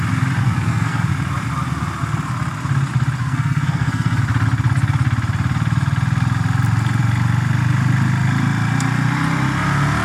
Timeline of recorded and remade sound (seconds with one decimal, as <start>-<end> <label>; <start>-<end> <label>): 0.0-0.4 recorded; 0.4-1.1 remade; 1.1-3.2 recorded; 3.2-4.2 remade; 4.2-10.0 recorded